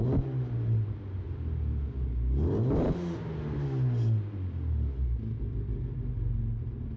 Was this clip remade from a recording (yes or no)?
no